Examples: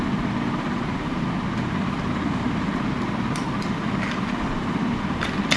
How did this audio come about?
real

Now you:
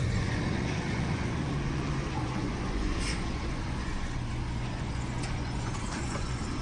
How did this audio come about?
fake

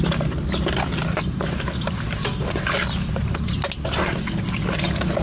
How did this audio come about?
real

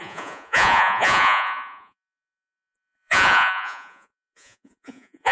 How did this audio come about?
fake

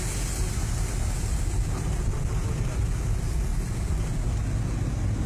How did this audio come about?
real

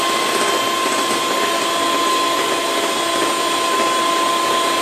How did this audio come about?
real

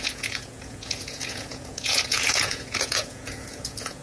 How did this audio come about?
fake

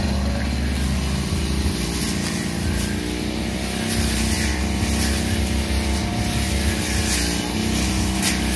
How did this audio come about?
real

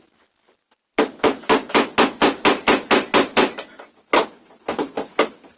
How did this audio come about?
real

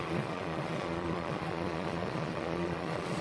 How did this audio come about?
fake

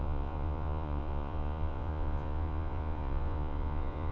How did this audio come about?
fake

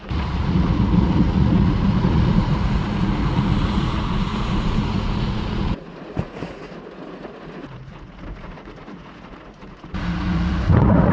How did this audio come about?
fake